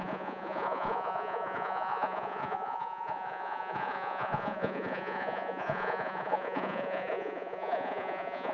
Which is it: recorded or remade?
remade